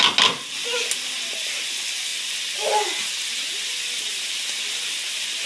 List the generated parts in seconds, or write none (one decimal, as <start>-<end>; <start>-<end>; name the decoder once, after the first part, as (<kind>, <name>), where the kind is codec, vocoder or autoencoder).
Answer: none